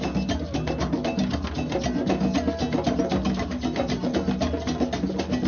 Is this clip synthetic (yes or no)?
no